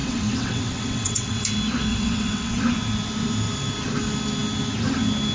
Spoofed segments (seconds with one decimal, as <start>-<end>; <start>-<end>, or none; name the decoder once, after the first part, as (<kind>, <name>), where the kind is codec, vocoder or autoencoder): 0.0-1.4 (vocoder, WaveNeXt); 1.9-2.6